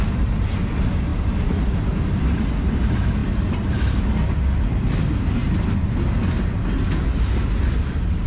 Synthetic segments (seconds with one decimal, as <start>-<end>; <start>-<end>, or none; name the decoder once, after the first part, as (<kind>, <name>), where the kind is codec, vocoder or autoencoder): 0.0-5.4 (vocoder, BigVGAN v2); 7.9-8.3